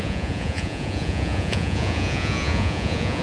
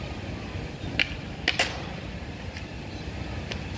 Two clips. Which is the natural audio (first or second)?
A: second